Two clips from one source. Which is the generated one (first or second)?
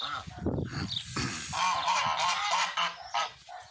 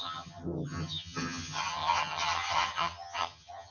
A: second